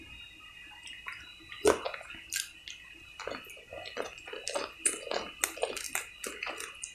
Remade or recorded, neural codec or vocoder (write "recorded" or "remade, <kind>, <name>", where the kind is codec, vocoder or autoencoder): recorded